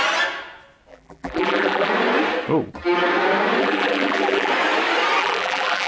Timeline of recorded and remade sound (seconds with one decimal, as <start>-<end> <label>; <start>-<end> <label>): 0.0-0.9 recorded; 0.9-1.9 remade; 1.9-3.6 recorded; 3.6-4.5 remade; 4.5-5.2 recorded; 5.2-5.9 remade

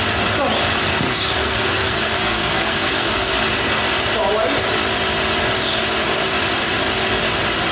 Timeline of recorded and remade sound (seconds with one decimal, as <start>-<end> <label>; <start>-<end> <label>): 0.0-1.1 recorded; 1.1-3.3 remade; 3.3-7.7 recorded

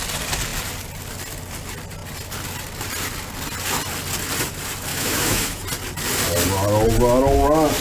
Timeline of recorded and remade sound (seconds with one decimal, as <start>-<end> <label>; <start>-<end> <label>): 0.0-4.9 recorded; 4.9-5.6 remade; 5.6-7.8 recorded

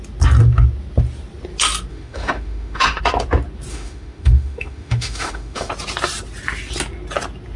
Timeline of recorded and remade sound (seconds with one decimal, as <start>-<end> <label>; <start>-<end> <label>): 0.0-1.9 recorded; 1.9-3.0 remade; 3.0-3.7 recorded; 3.7-5.7 remade; 5.7-7.6 recorded

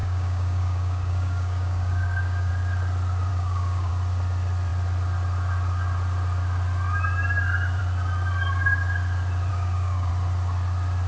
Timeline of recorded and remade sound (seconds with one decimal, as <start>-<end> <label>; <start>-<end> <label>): 0.0-2.5 remade; 2.5-3.3 recorded; 3.3-3.9 remade; 3.9-9.5 recorded; 9.5-10.1 remade; 10.1-11.1 recorded